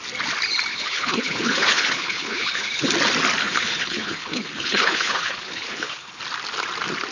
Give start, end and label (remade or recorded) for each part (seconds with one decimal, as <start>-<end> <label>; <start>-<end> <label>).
0.0-0.7 recorded; 0.7-2.9 remade; 2.9-3.4 recorded; 3.4-6.2 remade; 6.2-7.1 recorded